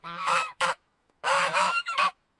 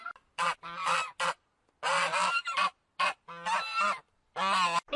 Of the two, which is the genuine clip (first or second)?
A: second